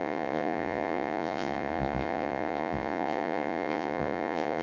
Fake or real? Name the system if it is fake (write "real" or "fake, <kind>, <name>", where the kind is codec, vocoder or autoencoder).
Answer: fake, vocoder, Vocos